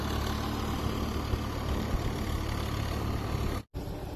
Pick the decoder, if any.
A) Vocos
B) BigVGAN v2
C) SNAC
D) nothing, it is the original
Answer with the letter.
D